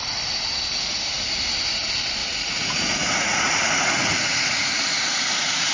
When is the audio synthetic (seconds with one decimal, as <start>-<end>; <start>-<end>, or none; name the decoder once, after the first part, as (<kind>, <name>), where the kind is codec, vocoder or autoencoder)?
2.2-5.7 (vocoder, Vocos)